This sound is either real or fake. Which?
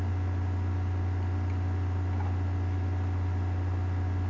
real